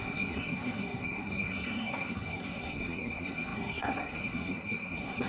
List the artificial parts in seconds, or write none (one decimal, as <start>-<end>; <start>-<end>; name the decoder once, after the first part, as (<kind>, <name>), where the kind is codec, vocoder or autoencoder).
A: 0.0-5.3 (codec, SNAC)